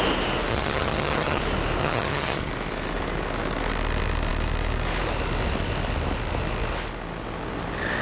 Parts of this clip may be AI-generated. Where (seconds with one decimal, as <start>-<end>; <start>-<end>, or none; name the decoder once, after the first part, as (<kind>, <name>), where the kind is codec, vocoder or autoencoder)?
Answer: 0.5-1.4 (vocoder, HiFi-GAN); 1.8-2.5